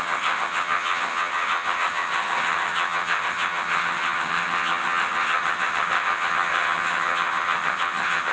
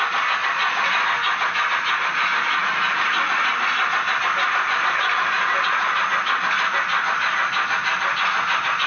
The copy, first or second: first